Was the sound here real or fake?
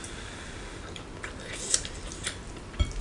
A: real